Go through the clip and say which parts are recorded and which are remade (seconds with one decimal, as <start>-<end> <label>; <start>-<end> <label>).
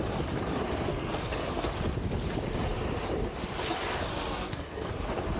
0.0-0.9 recorded; 0.9-1.7 remade; 1.7-4.1 recorded; 4.1-4.9 remade; 4.9-5.4 recorded